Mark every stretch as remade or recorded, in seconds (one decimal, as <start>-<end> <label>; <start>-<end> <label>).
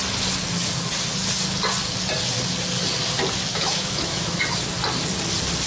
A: 0.0-3.5 recorded; 3.5-4.4 remade; 4.4-5.7 recorded